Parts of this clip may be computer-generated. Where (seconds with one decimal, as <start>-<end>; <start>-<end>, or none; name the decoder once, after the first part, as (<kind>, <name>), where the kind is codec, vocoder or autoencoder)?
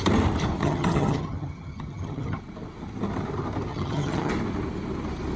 0.6-2.4 (vocoder, HiFi-GAN); 3.7-4.3